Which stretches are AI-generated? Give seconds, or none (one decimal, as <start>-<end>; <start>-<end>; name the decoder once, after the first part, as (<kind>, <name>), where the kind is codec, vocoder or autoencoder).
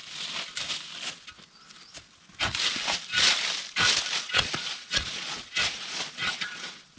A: 4.2-7.0 (vocoder, Vocos)